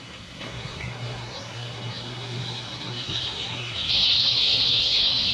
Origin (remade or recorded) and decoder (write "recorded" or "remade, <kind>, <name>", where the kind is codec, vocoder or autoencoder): remade, codec, SNAC